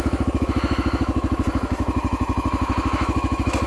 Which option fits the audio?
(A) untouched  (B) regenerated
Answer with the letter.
B